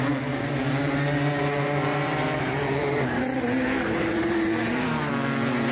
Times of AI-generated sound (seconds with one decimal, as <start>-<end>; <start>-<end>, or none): 1.9-5.1